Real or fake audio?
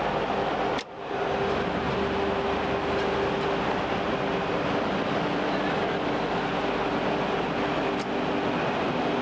real